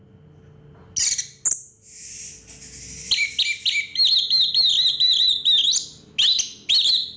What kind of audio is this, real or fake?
real